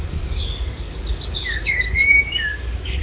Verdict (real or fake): fake